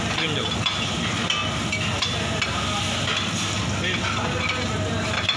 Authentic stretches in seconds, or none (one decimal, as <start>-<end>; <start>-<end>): 0.0-5.4